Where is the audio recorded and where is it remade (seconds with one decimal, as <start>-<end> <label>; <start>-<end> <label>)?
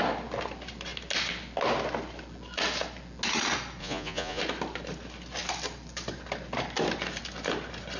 0.0-3.8 recorded; 3.8-4.4 remade; 4.4-8.0 recorded